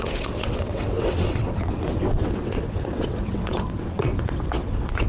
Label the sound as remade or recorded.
remade